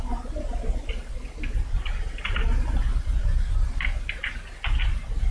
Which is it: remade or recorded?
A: recorded